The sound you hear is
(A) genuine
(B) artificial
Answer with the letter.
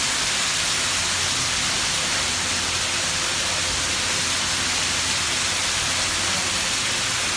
A